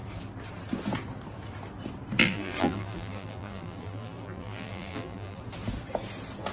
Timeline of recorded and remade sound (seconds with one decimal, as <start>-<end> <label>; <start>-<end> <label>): 0.0-2.2 recorded; 2.2-5.4 remade; 5.4-6.5 recorded